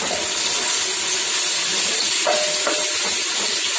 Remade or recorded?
recorded